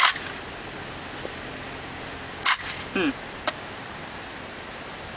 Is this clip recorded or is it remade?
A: recorded